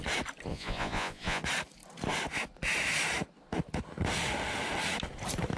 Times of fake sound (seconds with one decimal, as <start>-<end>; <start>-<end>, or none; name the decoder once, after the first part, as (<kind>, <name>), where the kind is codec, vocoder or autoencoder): 0.5-1.4 (vocoder, Vocos)